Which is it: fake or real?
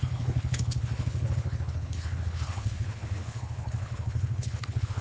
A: fake